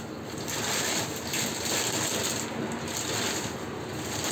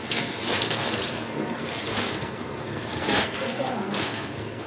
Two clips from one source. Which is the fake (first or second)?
second